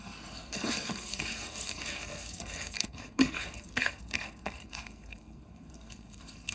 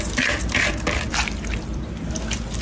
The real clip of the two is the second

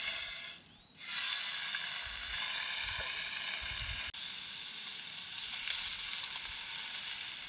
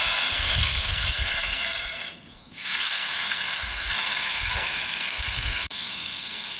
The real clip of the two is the first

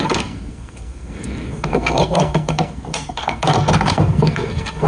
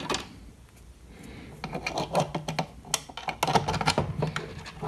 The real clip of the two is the second